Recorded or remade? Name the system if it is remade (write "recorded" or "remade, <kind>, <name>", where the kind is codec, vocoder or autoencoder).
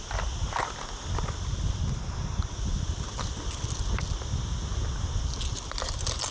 recorded